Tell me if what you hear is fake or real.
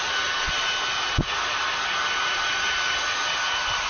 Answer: real